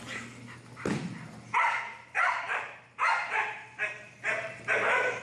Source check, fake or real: fake